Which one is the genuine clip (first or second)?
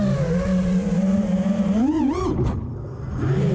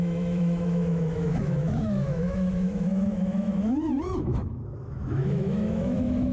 first